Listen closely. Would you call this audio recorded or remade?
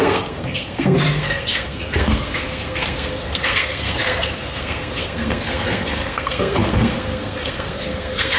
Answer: remade